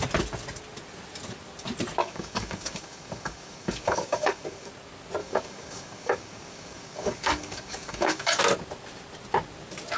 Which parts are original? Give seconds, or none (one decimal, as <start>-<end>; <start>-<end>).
0.0-2.0; 4.7-5.2; 8.4-10.0